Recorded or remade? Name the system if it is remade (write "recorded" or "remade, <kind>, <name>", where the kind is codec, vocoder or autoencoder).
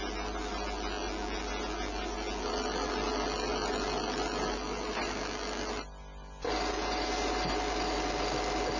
recorded